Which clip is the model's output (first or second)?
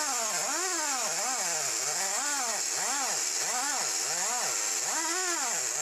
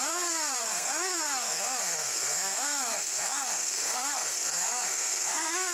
second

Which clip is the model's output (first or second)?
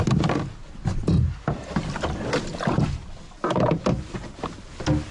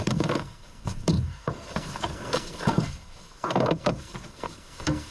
second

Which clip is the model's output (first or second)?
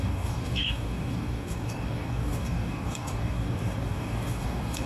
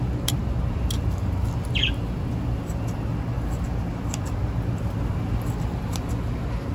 first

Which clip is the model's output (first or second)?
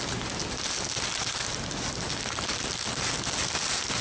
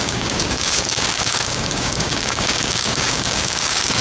second